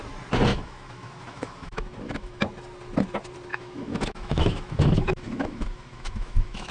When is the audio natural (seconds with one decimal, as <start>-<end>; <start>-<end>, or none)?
0.0-0.5; 2.4-3.5